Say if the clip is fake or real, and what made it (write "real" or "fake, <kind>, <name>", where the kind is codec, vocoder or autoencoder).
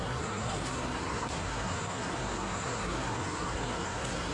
fake, codec, SNAC